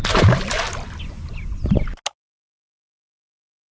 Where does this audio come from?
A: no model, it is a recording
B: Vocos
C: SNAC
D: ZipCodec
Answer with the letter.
A